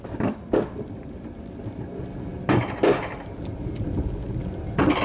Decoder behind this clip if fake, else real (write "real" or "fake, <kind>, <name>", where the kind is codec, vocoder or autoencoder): real